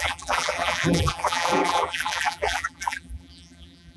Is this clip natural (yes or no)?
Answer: no